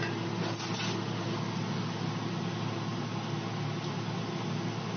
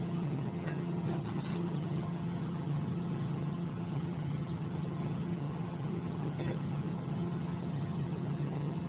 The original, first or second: first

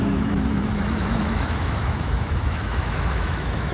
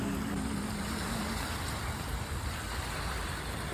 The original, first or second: second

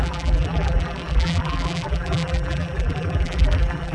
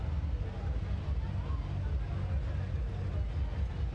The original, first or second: second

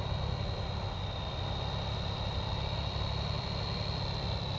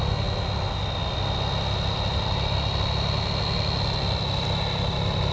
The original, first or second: second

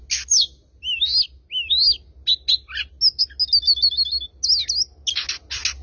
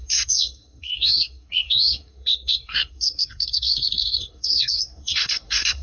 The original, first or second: first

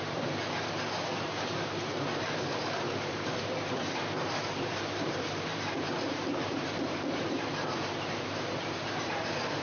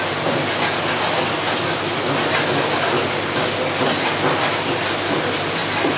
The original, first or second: second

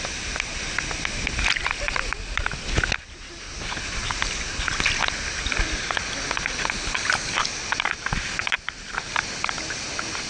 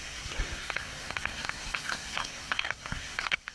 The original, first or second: first